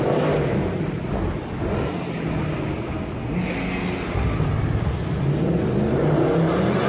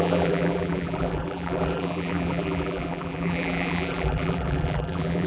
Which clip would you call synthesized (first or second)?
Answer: second